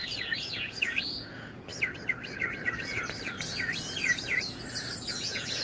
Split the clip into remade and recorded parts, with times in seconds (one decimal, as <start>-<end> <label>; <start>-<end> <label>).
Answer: 0.0-1.7 remade; 1.7-5.1 recorded; 5.1-5.6 remade